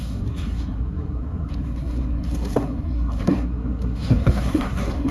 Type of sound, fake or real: fake